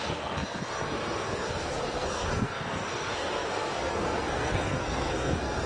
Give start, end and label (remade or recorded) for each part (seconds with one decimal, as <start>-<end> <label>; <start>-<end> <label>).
0.0-5.7 remade